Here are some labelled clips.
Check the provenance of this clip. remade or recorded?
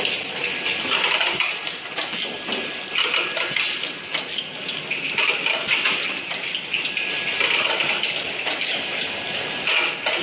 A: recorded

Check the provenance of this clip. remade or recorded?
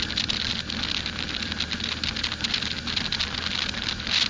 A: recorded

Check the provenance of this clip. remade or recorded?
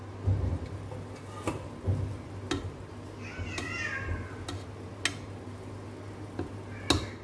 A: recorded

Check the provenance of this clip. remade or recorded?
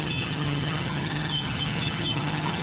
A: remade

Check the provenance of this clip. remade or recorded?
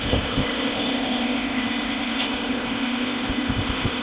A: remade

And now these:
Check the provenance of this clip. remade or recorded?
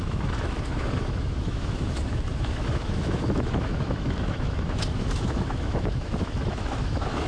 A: remade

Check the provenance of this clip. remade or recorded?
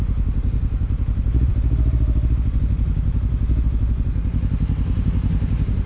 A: recorded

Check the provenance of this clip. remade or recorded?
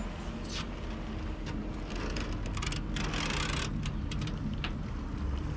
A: recorded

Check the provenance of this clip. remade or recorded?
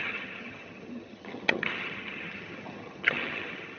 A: remade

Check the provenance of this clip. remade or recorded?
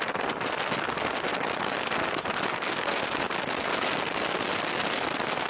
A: recorded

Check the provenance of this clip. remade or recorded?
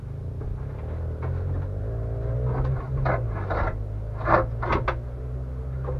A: recorded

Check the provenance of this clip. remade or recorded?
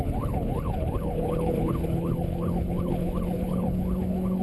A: remade